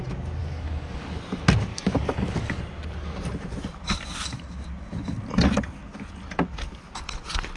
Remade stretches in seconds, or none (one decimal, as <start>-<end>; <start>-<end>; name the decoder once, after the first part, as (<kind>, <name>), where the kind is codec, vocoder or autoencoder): 0.4-1.2 (codec, DAC); 1.7-2.6